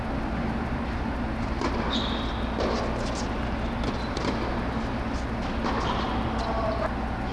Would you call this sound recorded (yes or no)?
yes